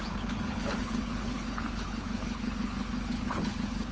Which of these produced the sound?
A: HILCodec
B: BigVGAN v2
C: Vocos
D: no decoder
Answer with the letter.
A